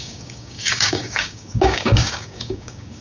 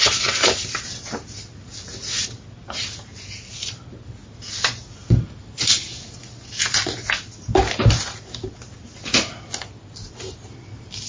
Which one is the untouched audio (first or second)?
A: second